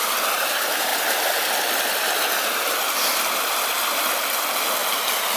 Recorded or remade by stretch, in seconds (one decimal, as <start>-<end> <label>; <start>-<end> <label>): 0.0-5.4 recorded